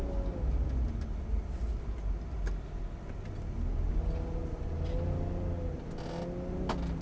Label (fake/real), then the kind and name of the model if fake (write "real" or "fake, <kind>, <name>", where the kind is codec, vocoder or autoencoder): real